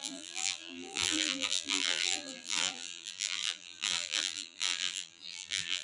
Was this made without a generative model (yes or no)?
no